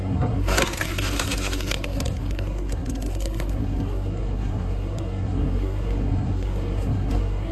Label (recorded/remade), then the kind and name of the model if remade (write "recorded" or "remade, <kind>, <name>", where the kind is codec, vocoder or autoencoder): remade, codec, SNAC